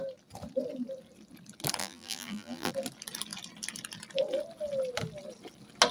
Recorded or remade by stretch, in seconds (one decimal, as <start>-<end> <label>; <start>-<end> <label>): 0.0-1.8 recorded; 1.8-2.7 remade; 2.7-5.9 recorded